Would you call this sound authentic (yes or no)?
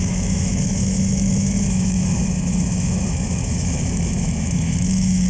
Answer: no